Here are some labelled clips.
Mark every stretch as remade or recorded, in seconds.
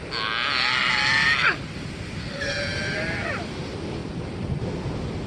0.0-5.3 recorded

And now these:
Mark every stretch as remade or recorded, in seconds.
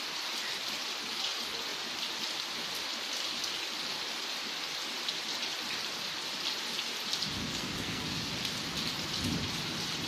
0.0-7.4 recorded; 7.4-8.3 remade; 8.3-10.1 recorded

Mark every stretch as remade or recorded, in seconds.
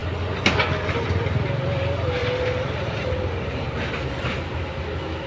0.0-2.2 recorded; 2.2-4.1 remade; 4.1-5.3 recorded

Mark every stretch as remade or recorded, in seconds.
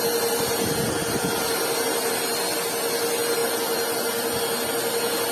0.0-5.3 recorded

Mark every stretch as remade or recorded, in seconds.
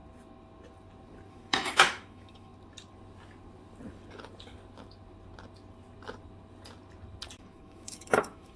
0.0-1.3 recorded; 1.3-2.5 remade; 2.5-7.4 recorded; 7.4-8.6 remade